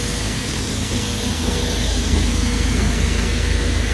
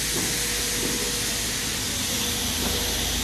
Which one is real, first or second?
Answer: second